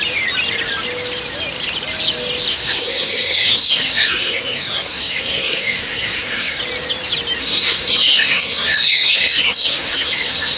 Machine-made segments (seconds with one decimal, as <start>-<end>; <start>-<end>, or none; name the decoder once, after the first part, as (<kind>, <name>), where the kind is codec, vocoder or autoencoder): 2.5-6.6 (codec, SNAC); 7.4-10.6